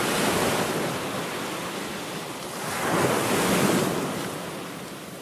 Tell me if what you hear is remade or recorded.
recorded